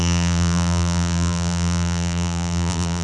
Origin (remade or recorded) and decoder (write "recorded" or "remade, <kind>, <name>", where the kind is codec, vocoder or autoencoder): remade, vocoder, BigVGAN v2